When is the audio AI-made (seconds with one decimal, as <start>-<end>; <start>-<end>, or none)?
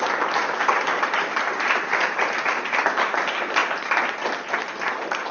0.0-3.6; 4.2-5.3